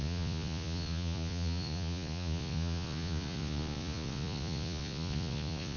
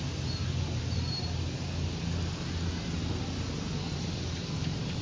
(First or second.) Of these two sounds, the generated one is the first